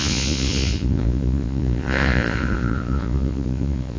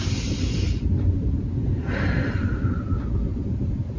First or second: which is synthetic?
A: first